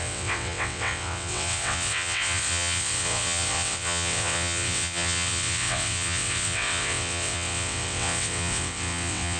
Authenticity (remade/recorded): remade